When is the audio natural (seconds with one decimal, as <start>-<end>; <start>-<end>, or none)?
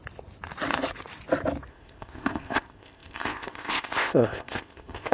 0.0-1.7